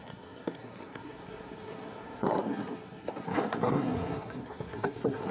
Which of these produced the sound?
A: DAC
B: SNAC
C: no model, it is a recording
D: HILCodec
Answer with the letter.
B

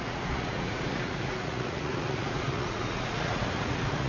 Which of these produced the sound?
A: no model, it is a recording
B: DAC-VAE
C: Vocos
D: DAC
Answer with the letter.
C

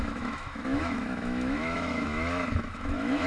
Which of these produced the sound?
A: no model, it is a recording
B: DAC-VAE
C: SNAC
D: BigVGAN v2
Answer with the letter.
B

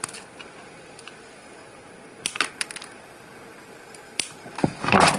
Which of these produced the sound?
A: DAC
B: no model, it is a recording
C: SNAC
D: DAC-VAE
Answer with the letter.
B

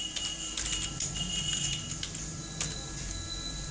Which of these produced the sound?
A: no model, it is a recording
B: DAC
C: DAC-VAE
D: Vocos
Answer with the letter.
A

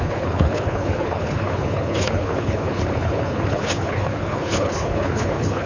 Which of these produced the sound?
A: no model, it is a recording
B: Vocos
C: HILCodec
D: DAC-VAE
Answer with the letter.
C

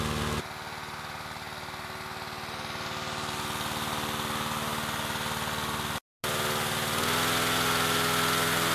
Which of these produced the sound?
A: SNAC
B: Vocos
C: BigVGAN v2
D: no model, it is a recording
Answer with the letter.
D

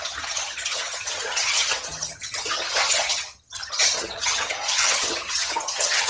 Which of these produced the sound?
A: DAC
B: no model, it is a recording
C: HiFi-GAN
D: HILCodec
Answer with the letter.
C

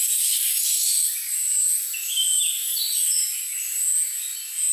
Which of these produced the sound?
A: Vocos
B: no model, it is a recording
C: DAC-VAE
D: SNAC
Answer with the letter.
B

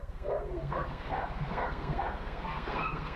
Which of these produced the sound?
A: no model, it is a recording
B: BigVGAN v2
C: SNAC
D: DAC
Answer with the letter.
C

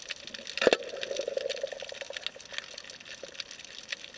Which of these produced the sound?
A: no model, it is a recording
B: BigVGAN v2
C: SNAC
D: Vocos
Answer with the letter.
A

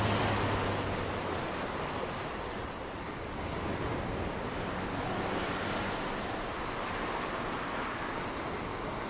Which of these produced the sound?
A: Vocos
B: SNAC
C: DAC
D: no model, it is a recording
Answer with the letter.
D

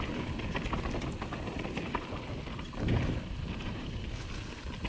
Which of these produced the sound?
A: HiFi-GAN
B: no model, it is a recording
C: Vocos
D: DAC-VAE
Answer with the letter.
B